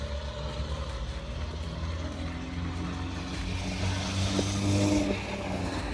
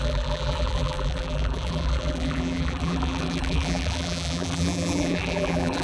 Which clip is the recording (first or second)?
first